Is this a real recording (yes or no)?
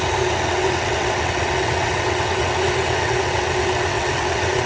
no